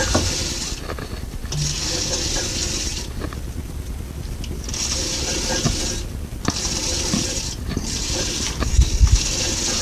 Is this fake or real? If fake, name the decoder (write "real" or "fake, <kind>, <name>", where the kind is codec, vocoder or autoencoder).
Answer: real